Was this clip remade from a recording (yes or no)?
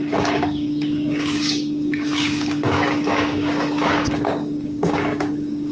yes